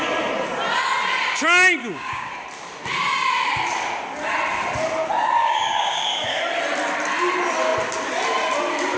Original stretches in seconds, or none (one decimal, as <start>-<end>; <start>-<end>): 0.0-1.8; 2.3-5.4; 6.4-9.0